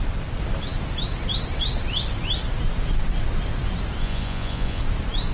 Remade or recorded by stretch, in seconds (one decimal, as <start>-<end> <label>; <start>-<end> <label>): 0.0-4.0 recorded; 4.0-4.8 remade; 4.8-5.3 recorded